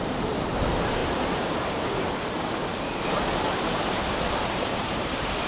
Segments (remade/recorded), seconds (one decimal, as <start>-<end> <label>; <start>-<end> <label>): 0.0-1.0 remade; 1.0-4.3 recorded; 4.3-5.5 remade